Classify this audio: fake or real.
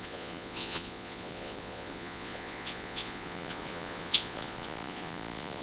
fake